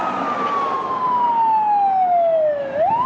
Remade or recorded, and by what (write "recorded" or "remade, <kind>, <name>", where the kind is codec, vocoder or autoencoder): recorded